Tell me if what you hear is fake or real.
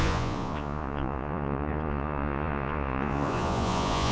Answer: fake